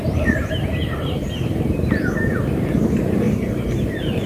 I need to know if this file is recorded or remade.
remade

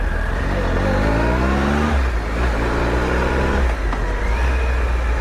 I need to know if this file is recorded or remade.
recorded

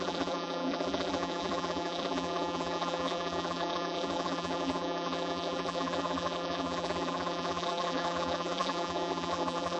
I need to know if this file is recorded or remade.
remade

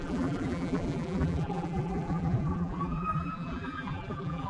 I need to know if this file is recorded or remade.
remade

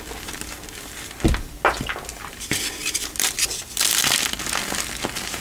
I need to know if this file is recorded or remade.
recorded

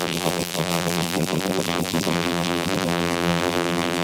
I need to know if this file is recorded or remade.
remade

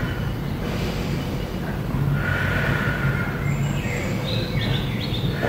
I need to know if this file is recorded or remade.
recorded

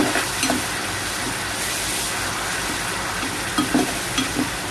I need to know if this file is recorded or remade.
recorded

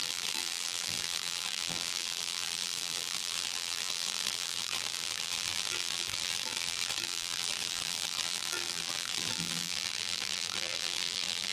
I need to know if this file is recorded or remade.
remade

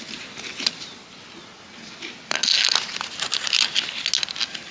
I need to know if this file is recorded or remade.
recorded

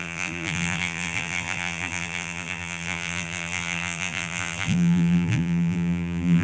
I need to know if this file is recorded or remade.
remade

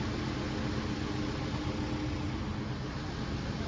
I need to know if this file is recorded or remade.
recorded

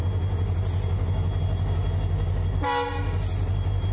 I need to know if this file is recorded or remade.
recorded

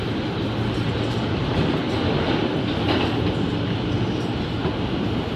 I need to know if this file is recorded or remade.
recorded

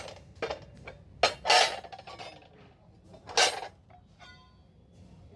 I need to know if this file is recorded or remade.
recorded